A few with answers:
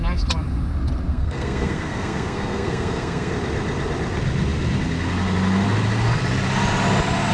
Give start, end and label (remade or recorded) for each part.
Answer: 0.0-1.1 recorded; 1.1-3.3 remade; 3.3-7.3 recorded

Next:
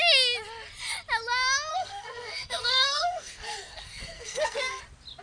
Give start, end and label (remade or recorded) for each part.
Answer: 0.0-1.7 recorded; 1.7-4.8 remade; 4.8-5.2 recorded

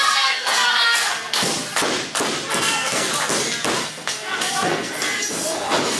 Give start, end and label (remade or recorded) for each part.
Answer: 0.0-1.5 remade; 1.5-2.5 recorded; 2.5-3.1 remade; 3.1-3.8 recorded; 3.8-6.0 remade

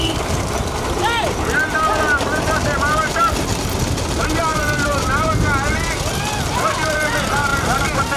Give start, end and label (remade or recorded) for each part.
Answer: 0.0-4.5 recorded; 4.5-5.2 remade; 5.2-7.5 recorded; 7.5-8.2 remade

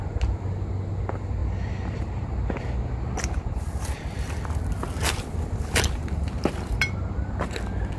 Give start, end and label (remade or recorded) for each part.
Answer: 0.0-8.0 recorded

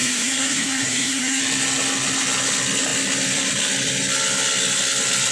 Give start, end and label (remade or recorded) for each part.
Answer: 0.0-1.4 remade; 1.4-5.3 recorded

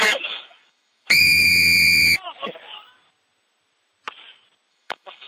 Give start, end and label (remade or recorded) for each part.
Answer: 0.0-1.5 remade; 1.5-4.7 recorded; 4.7-5.3 remade

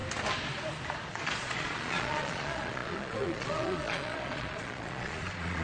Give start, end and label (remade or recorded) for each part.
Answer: 0.0-1.1 recorded; 1.1-5.6 remade